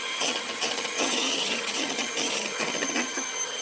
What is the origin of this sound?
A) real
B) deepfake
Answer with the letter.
B